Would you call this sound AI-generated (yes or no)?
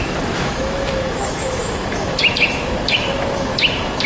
yes